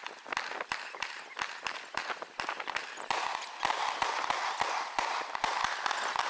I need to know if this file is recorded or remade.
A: recorded